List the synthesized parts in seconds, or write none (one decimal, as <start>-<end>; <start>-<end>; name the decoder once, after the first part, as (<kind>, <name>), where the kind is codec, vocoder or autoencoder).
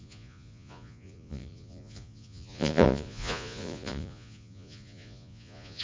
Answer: 0.0-5.8 (vocoder, Vocos)